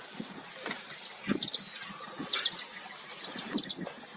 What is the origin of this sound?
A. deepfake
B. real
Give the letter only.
B